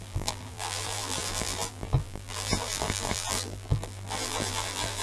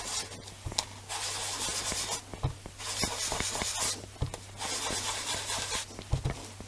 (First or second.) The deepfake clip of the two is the first